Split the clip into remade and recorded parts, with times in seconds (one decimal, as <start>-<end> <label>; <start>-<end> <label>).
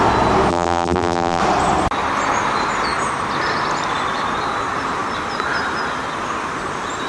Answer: 0.0-0.5 recorded; 0.5-1.4 remade; 1.4-7.1 recorded